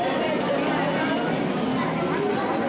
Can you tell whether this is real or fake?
real